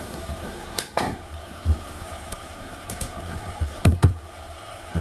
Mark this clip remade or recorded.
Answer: remade